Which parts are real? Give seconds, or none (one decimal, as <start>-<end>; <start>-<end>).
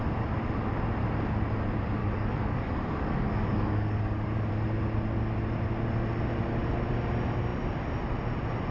0.0-2.0; 4.5-8.7